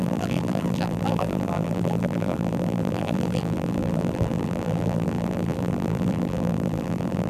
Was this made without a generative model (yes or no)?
no